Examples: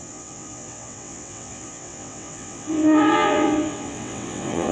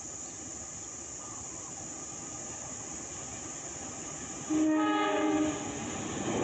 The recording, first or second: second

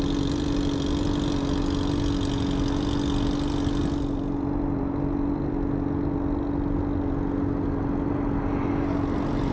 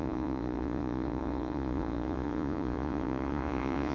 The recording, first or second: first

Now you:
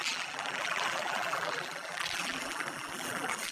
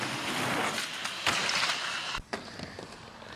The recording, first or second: second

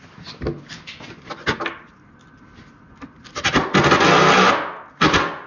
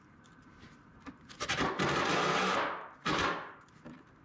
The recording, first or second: first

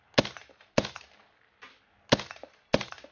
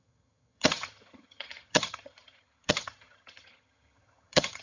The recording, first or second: first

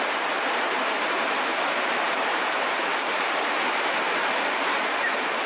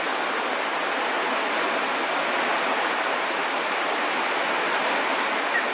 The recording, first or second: second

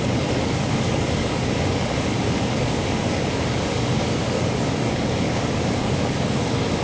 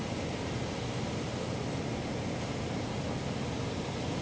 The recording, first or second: second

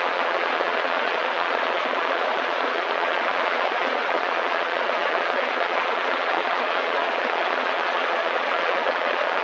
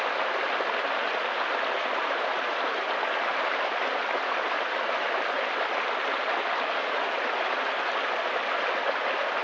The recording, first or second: second